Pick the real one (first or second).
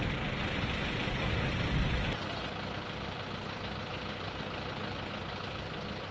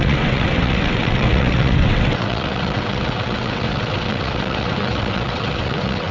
first